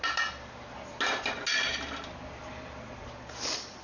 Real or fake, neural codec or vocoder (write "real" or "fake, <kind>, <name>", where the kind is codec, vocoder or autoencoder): real